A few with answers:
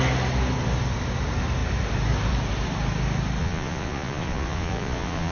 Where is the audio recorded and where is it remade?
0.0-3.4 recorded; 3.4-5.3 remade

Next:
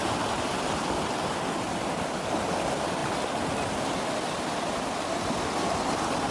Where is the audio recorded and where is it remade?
0.0-6.3 recorded

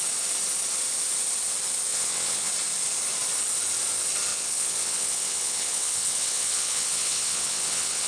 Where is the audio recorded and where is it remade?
0.0-1.9 recorded; 1.9-2.5 remade; 2.5-4.3 recorded; 4.3-8.1 remade

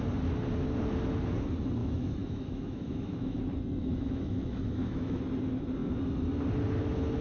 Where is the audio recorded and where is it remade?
0.0-1.8 recorded; 1.8-3.4 remade; 3.4-3.8 recorded; 3.8-5.2 remade; 5.2-7.2 recorded